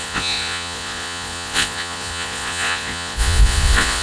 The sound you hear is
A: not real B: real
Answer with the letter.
A